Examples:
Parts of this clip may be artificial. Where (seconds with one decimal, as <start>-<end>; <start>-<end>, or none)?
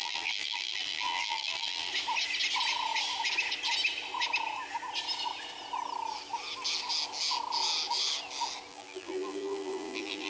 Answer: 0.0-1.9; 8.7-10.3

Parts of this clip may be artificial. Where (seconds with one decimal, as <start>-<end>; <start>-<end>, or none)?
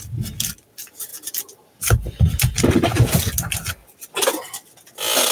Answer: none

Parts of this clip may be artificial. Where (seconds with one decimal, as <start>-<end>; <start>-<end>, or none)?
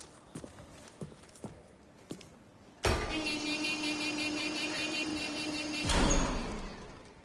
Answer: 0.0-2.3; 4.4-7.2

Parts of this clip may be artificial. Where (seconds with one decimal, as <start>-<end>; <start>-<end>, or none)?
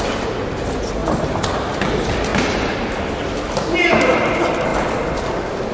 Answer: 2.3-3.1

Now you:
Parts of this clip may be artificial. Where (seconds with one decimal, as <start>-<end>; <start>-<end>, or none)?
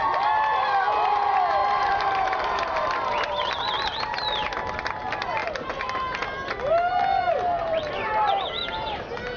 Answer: 1.6-3.5; 7.6-8.3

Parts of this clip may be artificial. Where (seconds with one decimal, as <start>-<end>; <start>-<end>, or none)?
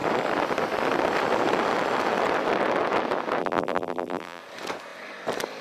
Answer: 3.4-4.4